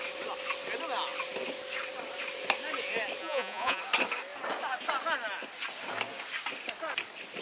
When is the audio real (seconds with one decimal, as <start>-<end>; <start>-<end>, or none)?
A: 0.0-3.2; 3.8-7.4